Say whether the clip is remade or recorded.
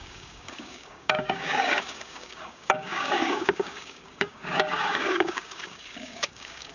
remade